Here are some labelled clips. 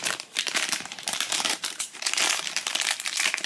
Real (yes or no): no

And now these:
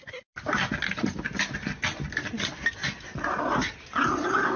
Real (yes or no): yes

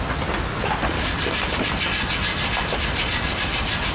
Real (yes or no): yes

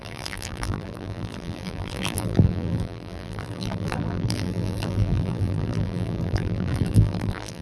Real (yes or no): no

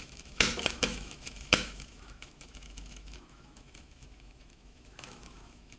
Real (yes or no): no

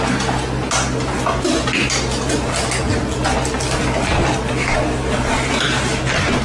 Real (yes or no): yes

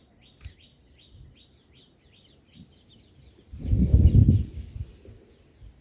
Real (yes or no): yes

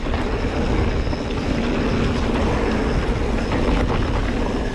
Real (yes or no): yes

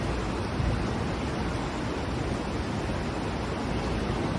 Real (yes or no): yes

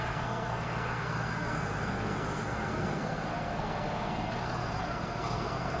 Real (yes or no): no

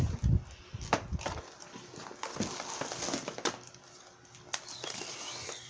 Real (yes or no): yes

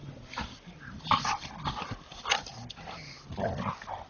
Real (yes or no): yes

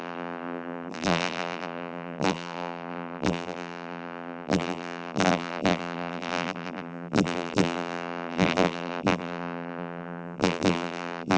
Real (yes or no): no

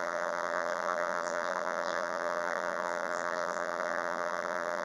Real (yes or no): no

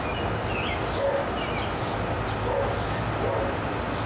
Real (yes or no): yes